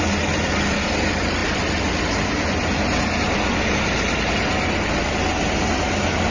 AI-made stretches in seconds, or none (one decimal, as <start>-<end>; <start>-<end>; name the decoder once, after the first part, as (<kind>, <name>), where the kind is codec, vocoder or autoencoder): none